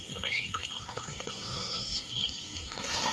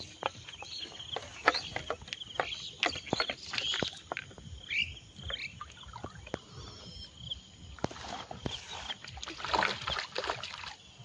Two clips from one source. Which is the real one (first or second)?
second